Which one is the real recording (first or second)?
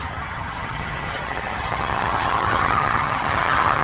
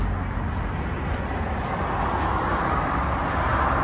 second